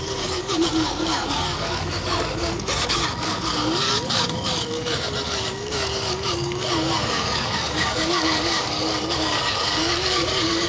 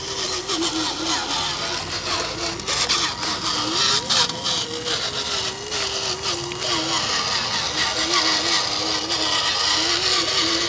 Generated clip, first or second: first